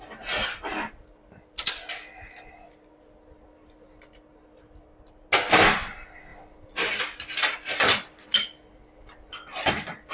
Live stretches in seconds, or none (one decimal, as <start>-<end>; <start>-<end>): 0.0-10.1